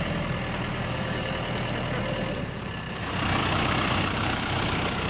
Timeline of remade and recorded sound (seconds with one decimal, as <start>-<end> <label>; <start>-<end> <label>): 0.0-0.7 recorded; 0.7-1.3 remade; 1.3-3.4 recorded; 3.4-5.1 remade